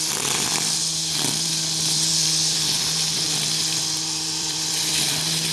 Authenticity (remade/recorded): remade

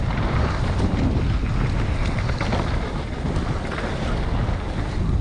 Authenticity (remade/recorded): recorded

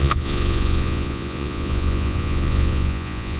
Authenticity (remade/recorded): remade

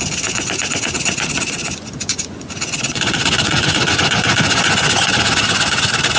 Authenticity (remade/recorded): remade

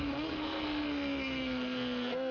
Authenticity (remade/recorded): remade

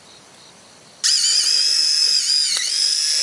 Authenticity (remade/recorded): recorded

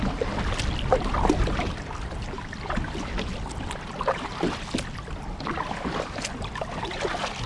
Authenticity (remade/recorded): recorded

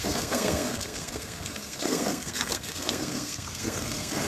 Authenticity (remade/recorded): remade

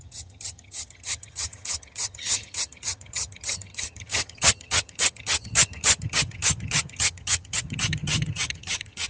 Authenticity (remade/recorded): remade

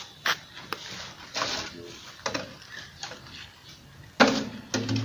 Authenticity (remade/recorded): recorded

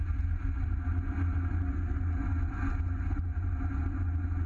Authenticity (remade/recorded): recorded